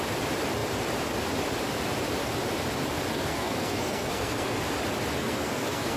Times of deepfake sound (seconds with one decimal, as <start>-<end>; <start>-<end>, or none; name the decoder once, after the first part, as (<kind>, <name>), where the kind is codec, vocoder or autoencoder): 3.1-4.6 (codec, SNAC); 5.2-6.0